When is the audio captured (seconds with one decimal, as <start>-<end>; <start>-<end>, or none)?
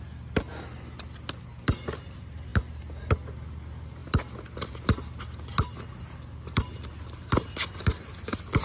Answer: 0.0-8.6